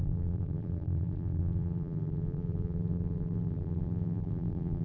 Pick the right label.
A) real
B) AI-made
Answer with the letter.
B